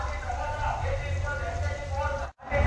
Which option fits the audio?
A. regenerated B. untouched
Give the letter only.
B